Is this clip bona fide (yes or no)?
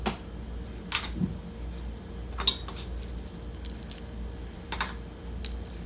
yes